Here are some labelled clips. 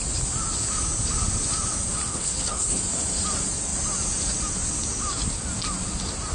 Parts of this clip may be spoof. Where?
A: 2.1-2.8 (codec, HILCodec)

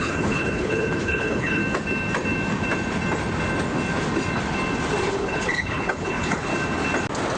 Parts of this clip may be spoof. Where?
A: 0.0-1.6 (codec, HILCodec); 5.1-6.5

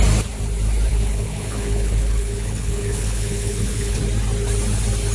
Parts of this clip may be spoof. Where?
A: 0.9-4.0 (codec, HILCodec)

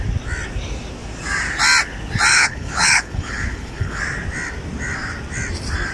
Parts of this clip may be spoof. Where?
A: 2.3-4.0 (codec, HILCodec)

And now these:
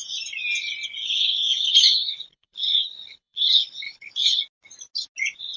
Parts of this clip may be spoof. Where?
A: 1.0-4.4 (codec, HILCodec)

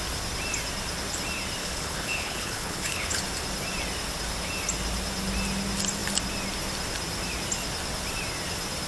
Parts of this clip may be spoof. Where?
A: 1.6-3.2 (codec, HILCodec)